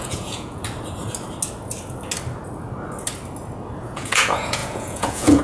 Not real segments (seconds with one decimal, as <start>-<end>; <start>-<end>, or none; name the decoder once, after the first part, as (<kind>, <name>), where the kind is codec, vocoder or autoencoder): 0.0-0.6 (vocoder, Vocos); 3.8-5.4